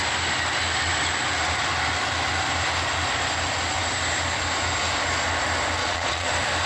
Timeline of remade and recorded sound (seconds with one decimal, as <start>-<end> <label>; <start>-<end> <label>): 0.0-5.8 recorded; 5.8-6.3 remade; 6.3-6.7 recorded